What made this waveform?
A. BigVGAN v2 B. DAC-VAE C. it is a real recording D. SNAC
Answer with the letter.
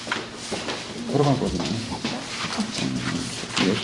C